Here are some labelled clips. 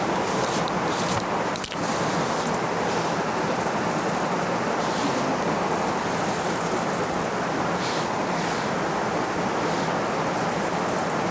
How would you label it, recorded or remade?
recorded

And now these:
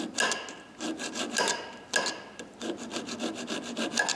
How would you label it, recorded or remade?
recorded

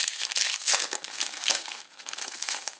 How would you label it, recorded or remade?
remade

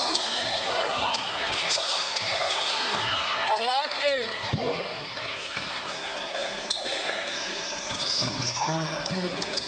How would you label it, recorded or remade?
remade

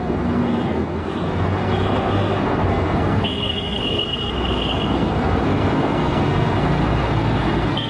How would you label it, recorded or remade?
remade